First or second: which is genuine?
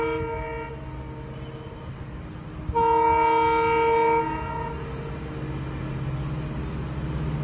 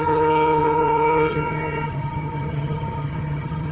first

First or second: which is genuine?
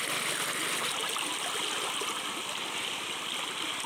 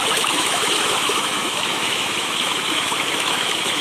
first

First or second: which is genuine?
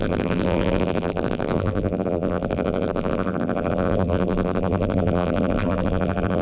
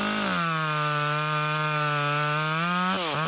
second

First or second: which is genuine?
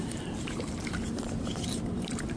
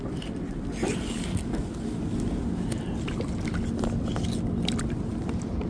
second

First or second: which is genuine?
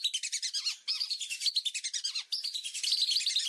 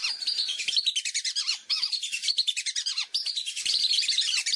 first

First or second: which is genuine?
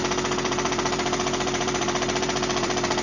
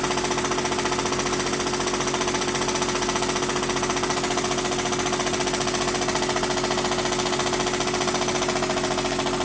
second